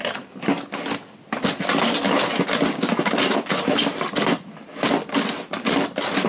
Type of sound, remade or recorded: recorded